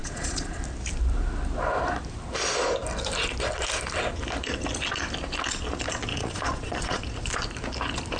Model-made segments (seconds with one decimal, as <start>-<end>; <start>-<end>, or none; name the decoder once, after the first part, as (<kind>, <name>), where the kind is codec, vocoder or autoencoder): 0.0-0.6 (vocoder, Vocos); 6.1-7.0